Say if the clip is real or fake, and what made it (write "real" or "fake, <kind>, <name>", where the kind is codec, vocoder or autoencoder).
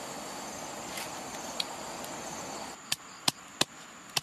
real